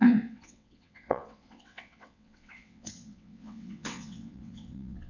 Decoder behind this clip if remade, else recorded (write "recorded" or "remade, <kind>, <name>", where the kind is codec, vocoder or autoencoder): remade, vocoder, WaveNeXt